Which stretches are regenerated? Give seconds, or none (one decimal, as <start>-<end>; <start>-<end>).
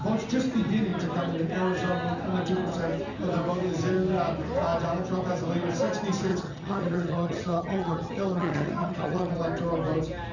6.3-9.3